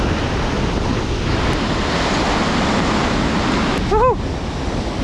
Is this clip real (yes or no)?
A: yes